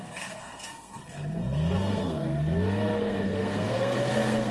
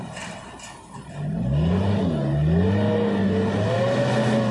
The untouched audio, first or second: second